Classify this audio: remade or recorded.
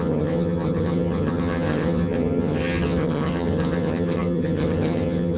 remade